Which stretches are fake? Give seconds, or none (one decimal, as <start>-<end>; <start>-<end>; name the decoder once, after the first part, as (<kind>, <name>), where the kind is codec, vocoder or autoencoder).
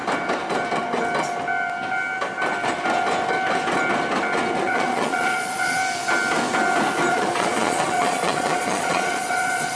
4.6-5.8 (vocoder, Vocos); 7.1-9.8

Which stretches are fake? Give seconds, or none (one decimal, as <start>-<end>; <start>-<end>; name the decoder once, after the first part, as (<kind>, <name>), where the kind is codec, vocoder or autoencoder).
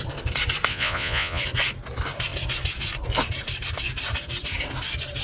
0.7-1.4 (vocoder, Vocos)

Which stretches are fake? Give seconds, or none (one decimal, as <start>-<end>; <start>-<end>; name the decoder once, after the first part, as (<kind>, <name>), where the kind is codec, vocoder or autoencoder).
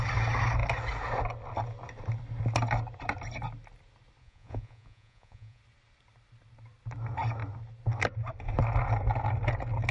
4.2-5.6 (vocoder, Vocos)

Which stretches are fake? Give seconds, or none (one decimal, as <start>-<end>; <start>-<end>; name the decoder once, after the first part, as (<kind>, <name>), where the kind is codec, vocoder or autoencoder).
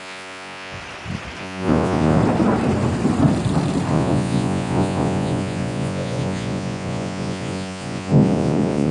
0.0-0.8 (vocoder, Vocos); 1.4-2.2; 3.9-8.9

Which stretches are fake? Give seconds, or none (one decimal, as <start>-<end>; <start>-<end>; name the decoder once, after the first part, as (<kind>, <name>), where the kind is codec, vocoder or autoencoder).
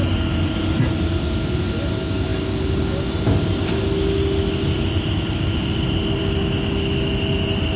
none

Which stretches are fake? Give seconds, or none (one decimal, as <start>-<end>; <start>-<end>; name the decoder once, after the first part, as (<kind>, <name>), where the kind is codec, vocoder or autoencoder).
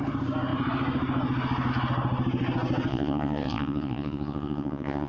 2.9-5.1 (vocoder, Vocos)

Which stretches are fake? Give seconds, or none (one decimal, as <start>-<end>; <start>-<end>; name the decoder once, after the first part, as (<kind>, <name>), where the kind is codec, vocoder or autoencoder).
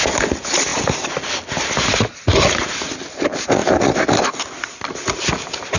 none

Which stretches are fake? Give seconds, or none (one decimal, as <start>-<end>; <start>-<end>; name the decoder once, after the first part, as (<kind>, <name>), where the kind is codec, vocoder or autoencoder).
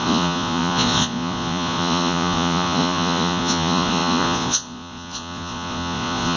0.0-6.4 (vocoder, Vocos)